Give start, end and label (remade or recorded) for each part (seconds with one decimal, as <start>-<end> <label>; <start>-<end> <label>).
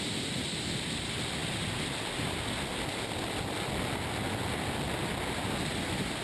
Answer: 0.0-6.2 recorded